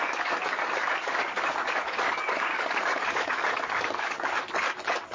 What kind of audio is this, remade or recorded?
remade